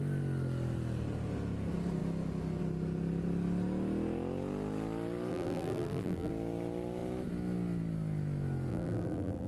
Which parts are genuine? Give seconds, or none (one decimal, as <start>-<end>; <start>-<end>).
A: 0.0-5.3; 6.3-8.7